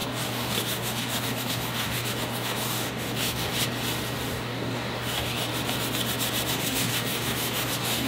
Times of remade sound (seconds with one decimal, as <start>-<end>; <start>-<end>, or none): 0.0-3.5; 4.3-5.5; 6.5-8.1